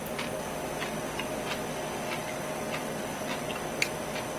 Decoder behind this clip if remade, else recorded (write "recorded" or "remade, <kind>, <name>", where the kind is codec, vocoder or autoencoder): recorded